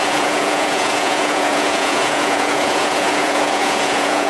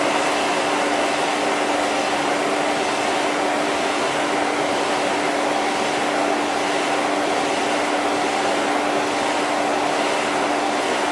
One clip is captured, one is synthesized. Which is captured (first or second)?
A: second